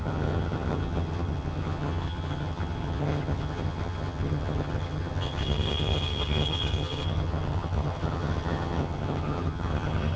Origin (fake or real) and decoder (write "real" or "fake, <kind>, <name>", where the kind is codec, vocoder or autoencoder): fake, vocoder, HiFi-GAN